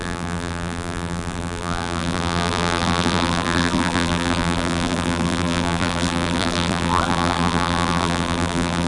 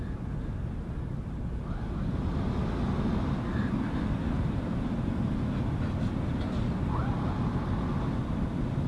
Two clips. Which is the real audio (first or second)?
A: second